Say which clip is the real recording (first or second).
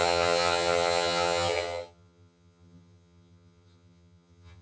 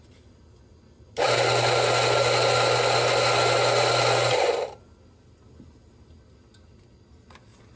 second